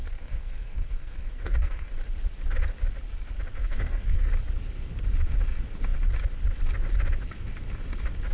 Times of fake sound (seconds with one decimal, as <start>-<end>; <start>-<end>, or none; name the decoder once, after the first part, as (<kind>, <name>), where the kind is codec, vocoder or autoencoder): 0.0-1.9 (codec, SNAC); 3.6-4.3